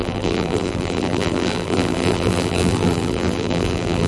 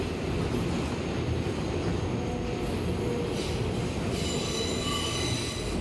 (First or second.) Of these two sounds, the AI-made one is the first